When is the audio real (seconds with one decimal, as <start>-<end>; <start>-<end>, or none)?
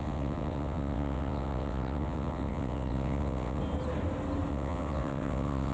3.6-4.5